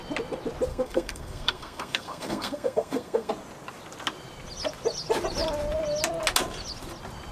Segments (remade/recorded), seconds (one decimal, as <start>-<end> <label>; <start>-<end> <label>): 0.0-0.7 recorded; 0.7-3.3 remade; 3.3-7.3 recorded